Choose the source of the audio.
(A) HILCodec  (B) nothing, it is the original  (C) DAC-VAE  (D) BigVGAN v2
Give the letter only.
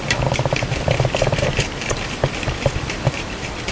D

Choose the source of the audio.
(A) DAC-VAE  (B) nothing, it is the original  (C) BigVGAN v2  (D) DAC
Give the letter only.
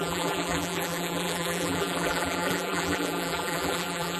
C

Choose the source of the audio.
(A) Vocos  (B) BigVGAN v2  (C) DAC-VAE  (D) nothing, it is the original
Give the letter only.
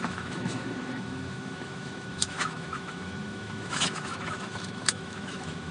C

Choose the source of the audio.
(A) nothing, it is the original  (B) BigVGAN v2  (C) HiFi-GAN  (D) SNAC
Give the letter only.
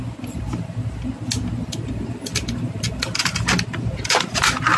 A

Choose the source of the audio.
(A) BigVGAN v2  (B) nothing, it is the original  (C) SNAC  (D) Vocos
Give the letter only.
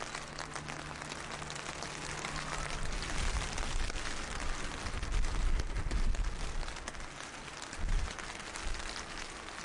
B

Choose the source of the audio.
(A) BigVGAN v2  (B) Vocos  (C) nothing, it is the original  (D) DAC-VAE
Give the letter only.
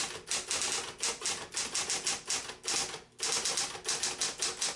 C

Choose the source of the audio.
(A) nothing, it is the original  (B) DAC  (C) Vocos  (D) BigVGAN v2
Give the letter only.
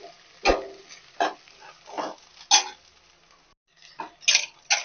A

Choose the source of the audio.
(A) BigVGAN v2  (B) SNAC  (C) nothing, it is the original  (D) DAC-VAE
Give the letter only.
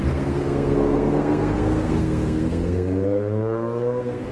B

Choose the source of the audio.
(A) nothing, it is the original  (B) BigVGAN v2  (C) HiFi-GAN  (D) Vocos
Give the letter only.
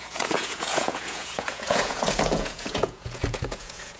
D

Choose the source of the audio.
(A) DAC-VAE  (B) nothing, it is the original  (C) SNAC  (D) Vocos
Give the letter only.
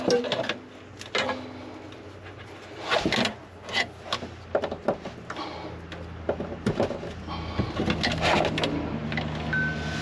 B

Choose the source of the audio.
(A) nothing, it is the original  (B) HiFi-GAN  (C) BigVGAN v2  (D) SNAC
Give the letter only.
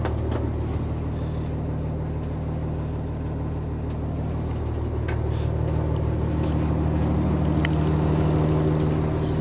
A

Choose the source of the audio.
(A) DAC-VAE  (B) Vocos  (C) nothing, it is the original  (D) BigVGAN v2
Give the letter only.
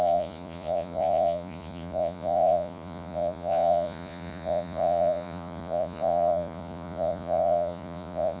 B